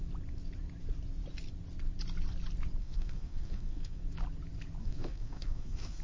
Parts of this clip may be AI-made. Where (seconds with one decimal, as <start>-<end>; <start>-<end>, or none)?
2.8-4.0; 4.8-6.0